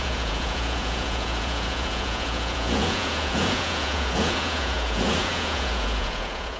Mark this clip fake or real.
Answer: fake